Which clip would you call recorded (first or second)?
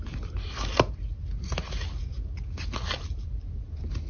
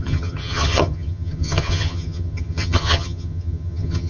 first